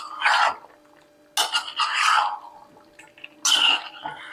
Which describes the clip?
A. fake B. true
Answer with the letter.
B